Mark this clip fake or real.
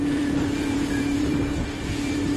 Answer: fake